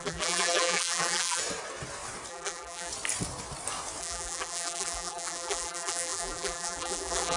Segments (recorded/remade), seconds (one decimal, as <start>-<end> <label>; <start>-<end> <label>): 0.0-1.4 remade; 1.4-2.3 recorded; 2.3-2.9 remade; 2.9-4.0 recorded; 4.0-7.4 remade